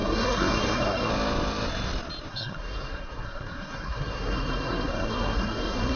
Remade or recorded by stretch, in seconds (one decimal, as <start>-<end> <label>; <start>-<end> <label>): 0.0-1.1 remade; 1.1-2.3 recorded; 2.3-6.0 remade